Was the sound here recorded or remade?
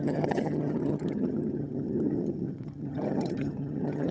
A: remade